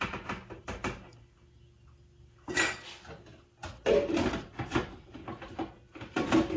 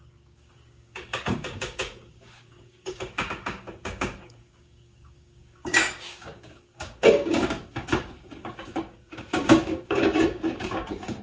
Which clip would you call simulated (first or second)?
second